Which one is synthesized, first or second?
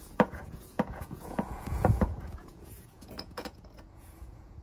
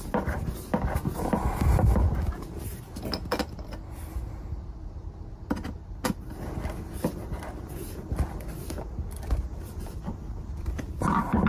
first